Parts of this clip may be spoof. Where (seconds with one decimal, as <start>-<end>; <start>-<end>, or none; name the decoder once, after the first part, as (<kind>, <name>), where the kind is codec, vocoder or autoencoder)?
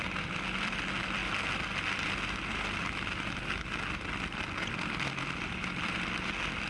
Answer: none